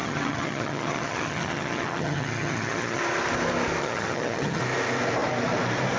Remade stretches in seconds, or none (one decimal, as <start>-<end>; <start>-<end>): 0.0-3.0; 3.8-4.6